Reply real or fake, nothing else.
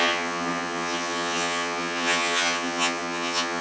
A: fake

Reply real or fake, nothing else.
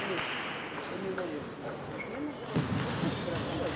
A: real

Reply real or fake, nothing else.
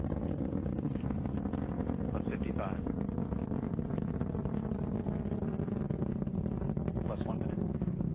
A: real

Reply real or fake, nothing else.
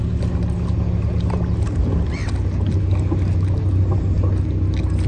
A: real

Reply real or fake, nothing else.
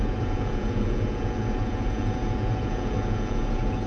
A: fake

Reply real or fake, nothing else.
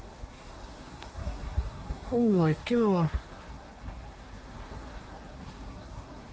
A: fake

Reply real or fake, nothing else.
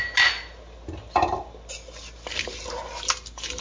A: real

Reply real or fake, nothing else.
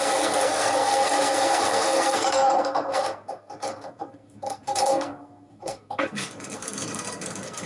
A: fake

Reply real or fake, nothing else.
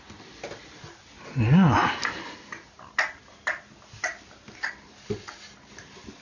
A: real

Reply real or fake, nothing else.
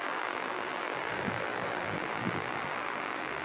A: fake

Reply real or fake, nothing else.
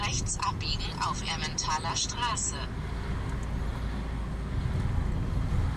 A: real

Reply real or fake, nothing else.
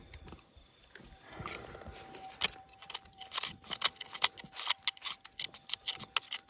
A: real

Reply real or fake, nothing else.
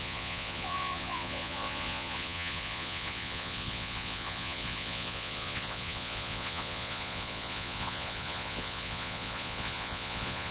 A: fake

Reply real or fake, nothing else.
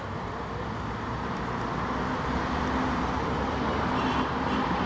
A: real